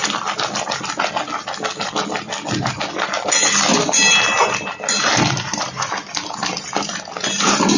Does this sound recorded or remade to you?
recorded